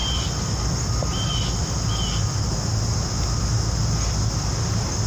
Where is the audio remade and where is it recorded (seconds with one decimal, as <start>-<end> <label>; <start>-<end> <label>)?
0.0-5.1 recorded